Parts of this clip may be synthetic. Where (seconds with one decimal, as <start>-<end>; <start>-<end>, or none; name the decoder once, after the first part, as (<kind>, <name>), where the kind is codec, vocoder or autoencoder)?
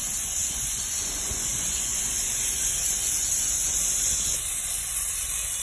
0.0-5.6 (vocoder, Vocos)